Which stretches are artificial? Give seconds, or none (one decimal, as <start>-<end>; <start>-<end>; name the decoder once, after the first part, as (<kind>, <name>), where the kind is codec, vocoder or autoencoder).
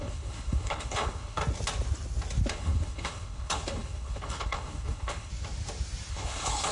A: 0.0-1.4 (codec, HILCodec); 2.5-5.3; 6.1-6.7